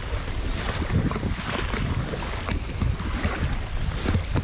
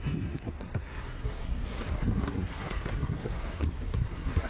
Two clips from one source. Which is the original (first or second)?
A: first